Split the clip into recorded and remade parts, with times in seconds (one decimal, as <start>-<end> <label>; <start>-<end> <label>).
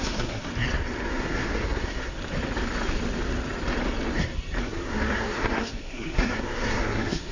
0.0-0.5 remade; 0.5-1.1 recorded; 1.1-2.2 remade; 2.2-4.6 recorded; 4.6-7.3 remade